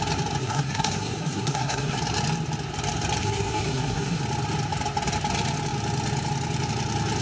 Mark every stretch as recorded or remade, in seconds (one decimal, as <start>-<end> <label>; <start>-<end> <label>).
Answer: 0.0-0.4 recorded; 0.4-2.0 remade; 2.0-3.2 recorded; 3.2-4.2 remade; 4.2-7.2 recorded